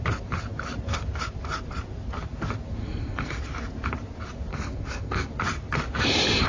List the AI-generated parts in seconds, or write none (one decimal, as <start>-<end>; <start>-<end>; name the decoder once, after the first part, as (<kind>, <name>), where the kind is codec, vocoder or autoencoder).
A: 2.8-3.4 (codec, SNAC); 4.5-5.3